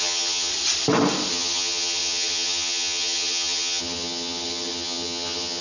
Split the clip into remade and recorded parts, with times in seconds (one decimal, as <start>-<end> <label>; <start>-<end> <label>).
0.0-0.5 remade; 0.5-1.3 recorded; 1.3-5.6 remade